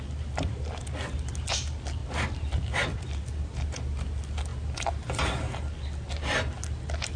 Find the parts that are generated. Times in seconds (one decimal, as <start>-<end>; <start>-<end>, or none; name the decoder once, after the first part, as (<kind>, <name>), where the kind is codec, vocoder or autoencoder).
none